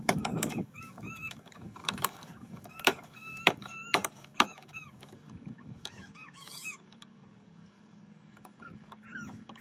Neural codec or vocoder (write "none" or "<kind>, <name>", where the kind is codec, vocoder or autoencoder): codec, DAC